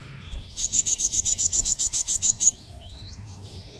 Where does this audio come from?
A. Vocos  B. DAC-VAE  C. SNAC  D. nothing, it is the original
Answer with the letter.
B